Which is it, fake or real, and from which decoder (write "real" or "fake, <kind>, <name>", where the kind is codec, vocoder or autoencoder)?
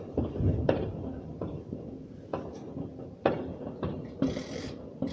fake, vocoder, BigVGAN v2